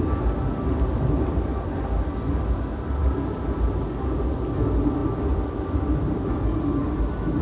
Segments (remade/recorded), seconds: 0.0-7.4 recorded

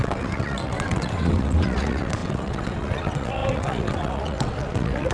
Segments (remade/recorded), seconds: 0.0-5.1 remade

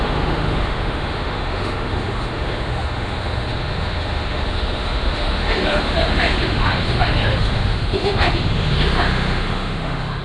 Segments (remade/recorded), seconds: 0.0-10.2 remade

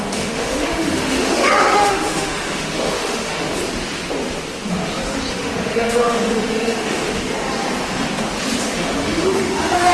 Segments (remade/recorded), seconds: 0.0-3.6 remade; 3.6-5.3 recorded; 5.3-7.0 remade; 7.0-8.6 recorded; 8.6-9.9 remade

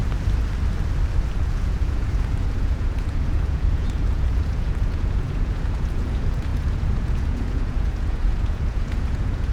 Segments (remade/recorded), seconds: 0.0-1.4 recorded; 1.4-9.5 remade